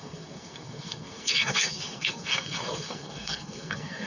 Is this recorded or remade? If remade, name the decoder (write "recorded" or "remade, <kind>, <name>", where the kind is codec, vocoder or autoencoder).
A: remade, codec, SNAC